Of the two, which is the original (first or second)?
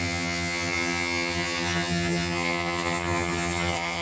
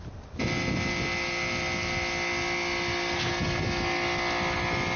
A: second